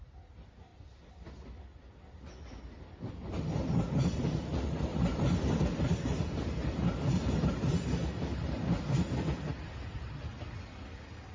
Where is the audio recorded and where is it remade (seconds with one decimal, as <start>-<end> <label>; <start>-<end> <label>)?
0.0-4.9 recorded; 4.9-6.3 remade; 6.3-11.3 recorded